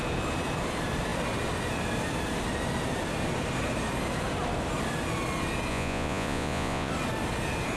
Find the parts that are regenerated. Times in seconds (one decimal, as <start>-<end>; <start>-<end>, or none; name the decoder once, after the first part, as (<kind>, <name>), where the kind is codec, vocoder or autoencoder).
5.7-6.9 (vocoder, Vocos)